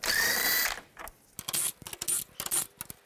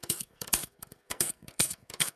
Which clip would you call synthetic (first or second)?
second